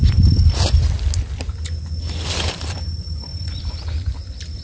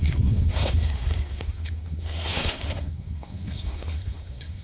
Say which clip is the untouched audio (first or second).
first